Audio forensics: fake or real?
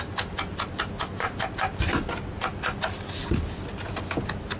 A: real